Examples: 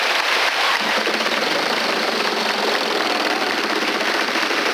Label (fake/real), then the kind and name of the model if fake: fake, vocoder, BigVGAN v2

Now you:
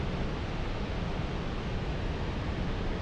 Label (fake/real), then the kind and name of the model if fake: real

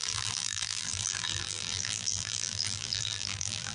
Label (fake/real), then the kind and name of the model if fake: fake, vocoder, BigVGAN v2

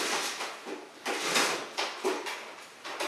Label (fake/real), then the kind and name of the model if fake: real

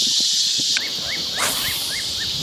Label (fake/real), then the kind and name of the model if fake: real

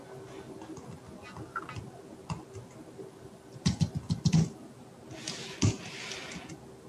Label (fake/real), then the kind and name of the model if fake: real